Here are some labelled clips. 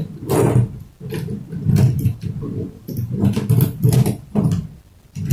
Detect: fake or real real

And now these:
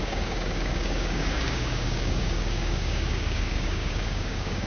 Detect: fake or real fake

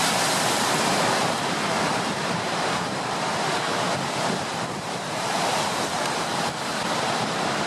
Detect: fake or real fake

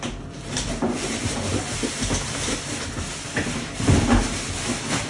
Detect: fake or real real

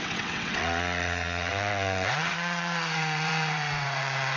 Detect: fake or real fake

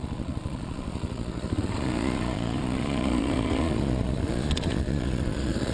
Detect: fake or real fake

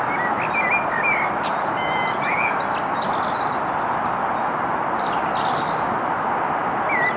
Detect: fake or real real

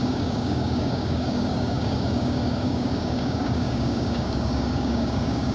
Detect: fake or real fake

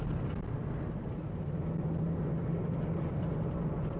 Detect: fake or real real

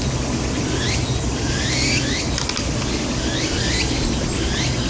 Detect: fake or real real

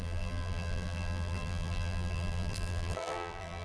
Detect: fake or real fake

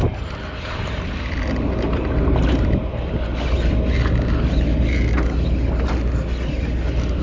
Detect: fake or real real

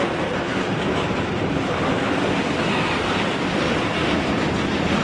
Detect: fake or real real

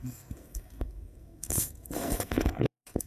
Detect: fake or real fake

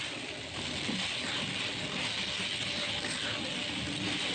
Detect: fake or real real